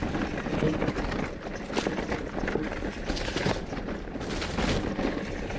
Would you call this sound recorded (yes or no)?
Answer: yes